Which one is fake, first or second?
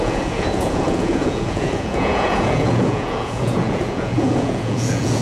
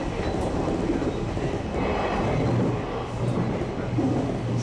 first